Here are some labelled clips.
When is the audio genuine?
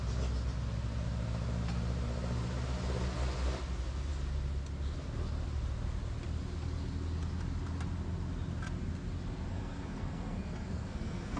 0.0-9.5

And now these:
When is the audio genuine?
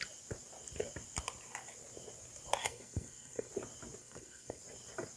0.0-2.6; 3.5-4.0; 4.6-5.2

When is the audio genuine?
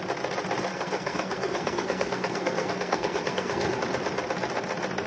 0.0-0.7; 3.8-5.1